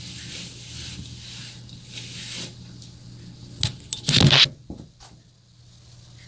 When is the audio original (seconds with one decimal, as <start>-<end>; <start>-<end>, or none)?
0.0-6.3